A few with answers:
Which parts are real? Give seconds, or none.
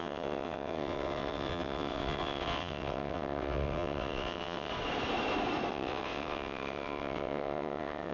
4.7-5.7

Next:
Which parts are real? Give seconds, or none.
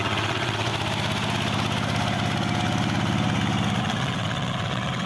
0.7-3.8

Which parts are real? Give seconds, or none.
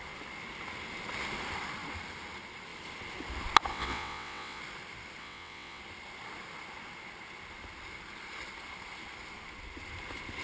0.0-3.7; 4.6-5.2; 5.8-10.4